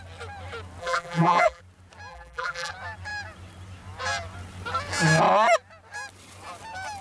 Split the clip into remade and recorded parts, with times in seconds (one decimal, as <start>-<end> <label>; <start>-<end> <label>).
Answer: 0.0-0.8 recorded; 0.8-1.6 remade; 1.6-2.1 recorded; 2.1-2.7 remade; 2.7-7.0 recorded